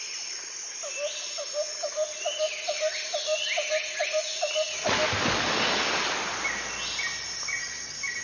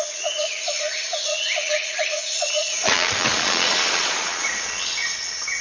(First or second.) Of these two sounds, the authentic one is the first